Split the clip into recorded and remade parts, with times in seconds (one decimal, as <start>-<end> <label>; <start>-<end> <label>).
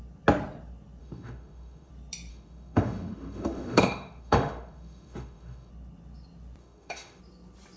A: 0.0-1.0 recorded; 1.0-1.9 remade; 1.9-2.3 recorded; 2.3-5.7 remade; 5.7-6.6 recorded; 6.6-7.2 remade; 7.2-7.8 recorded